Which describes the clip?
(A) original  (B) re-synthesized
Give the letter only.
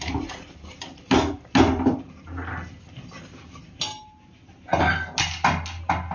A